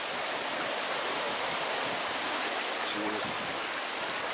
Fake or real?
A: real